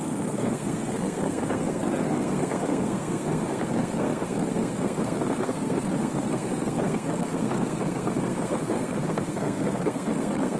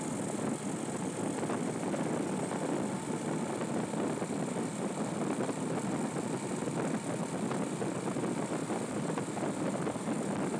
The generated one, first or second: first